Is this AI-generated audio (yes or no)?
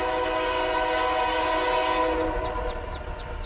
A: no